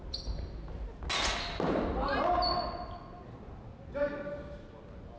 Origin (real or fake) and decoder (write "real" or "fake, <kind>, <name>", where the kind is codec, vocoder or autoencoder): real